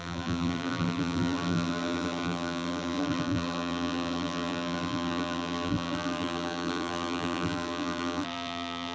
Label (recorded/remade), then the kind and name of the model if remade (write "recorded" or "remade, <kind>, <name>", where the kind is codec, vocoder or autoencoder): remade, vocoder, BigVGAN v2